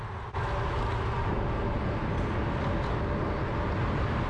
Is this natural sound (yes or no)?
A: yes